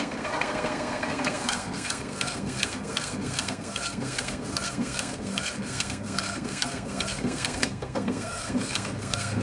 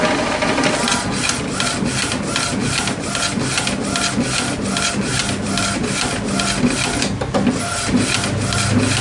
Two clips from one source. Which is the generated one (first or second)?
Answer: first